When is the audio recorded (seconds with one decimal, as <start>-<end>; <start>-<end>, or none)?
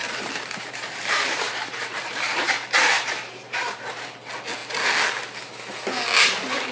4.0-6.7